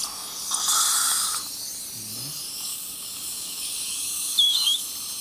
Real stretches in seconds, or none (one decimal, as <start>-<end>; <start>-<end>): 0.0-2.7; 4.8-5.2